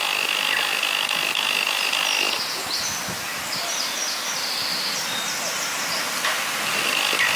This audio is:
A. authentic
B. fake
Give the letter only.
A